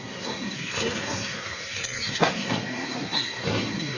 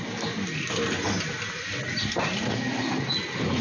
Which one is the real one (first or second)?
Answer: second